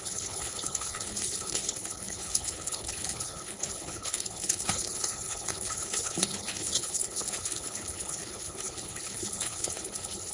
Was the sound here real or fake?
fake